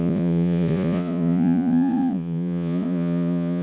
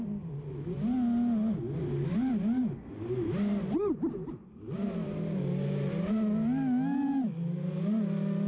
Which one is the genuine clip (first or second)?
second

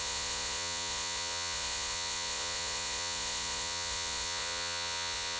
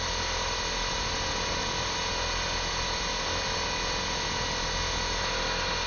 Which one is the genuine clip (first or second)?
second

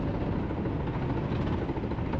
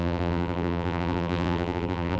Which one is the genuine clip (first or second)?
first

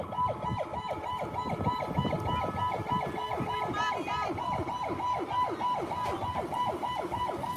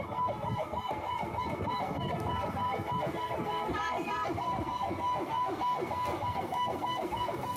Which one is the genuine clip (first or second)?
first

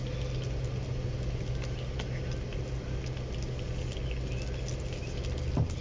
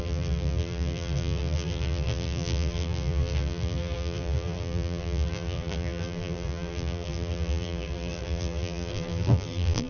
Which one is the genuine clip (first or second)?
first